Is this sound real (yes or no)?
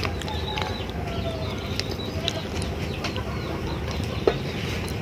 yes